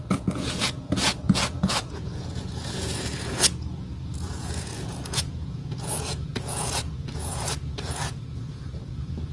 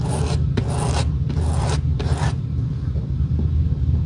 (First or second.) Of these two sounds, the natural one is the second